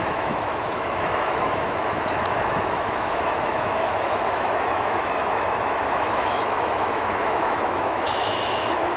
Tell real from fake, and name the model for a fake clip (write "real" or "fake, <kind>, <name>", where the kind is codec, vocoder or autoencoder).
fake, autoencoder, DAC-VAE